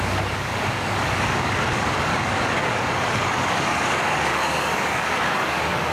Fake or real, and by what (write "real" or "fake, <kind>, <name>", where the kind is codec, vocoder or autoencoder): fake, codec, DAC